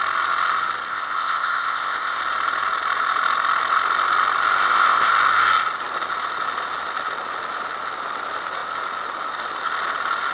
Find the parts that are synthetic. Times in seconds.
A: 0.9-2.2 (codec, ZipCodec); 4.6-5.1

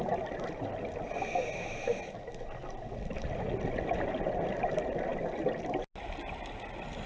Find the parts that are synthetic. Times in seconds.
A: none

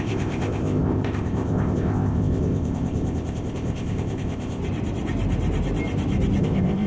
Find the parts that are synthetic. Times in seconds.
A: 0.0-4.6 (codec, ZipCodec); 6.4-6.9

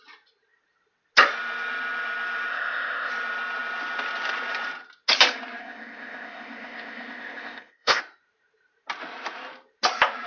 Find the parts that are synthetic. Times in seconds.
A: 2.5-3.1 (codec, ZipCodec); 5.6-8.0

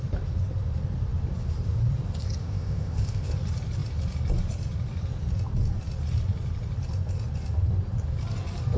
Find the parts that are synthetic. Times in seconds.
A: 2.4-3.3 (codec, ZipCodec)

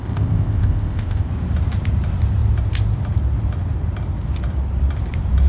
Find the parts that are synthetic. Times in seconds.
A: 0.0-1.3 (codec, ZipCodec)

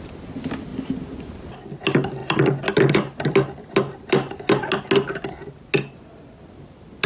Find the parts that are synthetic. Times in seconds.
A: none